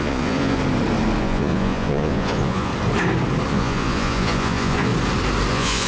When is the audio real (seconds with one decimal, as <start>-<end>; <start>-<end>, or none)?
0.6-1.2; 2.7-3.5; 4.9-5.5

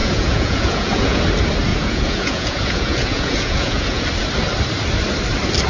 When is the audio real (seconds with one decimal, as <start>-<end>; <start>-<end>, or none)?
1.2-1.7; 4.0-5.7

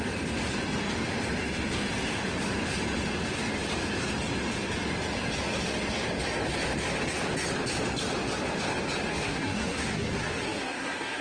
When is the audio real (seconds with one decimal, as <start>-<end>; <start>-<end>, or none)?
0.0-9.1

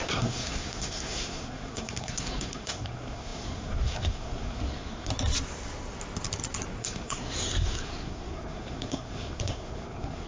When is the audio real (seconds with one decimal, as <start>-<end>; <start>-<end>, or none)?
5.1-6.8

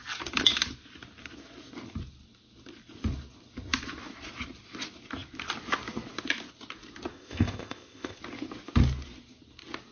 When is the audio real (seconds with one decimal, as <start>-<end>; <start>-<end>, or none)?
0.0-7.1; 8.2-9.9